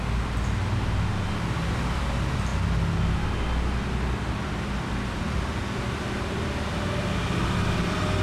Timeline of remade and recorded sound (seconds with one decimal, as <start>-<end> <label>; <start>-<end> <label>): 0.0-8.2 recorded